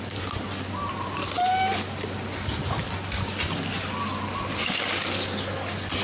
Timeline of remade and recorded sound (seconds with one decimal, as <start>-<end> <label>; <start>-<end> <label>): 0.0-6.0 recorded